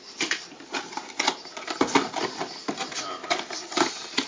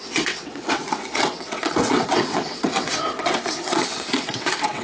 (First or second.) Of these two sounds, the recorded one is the first